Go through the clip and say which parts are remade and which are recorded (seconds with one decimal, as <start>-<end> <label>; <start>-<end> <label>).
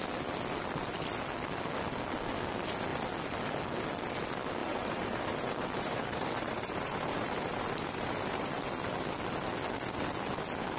0.0-4.6 recorded; 4.6-8.5 remade; 8.5-10.8 recorded